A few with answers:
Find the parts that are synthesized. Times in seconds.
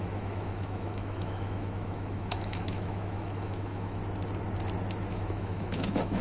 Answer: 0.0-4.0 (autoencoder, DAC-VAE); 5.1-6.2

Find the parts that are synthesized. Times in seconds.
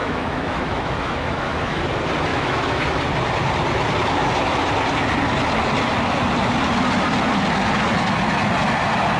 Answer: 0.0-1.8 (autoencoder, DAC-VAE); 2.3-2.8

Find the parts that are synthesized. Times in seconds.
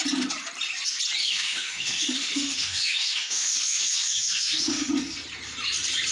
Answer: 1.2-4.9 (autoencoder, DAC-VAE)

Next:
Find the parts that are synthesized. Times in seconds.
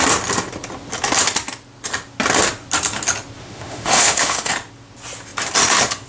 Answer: 3.4-4.5 (autoencoder, DAC-VAE)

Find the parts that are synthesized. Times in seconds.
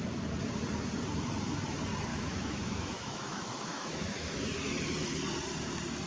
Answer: 2.1-4.4 (autoencoder, DAC-VAE)